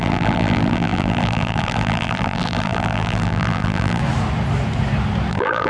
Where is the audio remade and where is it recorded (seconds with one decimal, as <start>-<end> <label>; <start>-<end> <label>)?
0.0-4.0 remade; 4.0-5.3 recorded; 5.3-5.7 remade

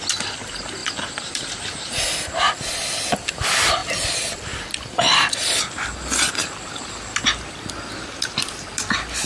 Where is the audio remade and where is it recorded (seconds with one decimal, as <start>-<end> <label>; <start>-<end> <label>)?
0.0-9.3 recorded

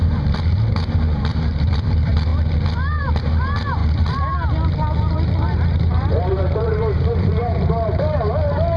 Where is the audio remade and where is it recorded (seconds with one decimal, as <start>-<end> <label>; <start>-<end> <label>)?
0.0-2.3 remade; 2.3-3.2 recorded; 3.2-8.8 remade